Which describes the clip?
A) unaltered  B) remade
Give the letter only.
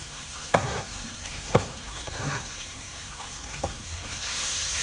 B